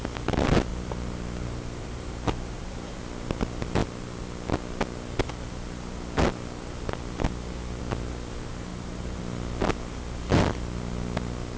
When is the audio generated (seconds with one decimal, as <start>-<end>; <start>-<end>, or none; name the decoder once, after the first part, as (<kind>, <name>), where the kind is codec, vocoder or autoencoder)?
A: 0.7-3.0 (vocoder, BigVGAN v2); 8.7-9.2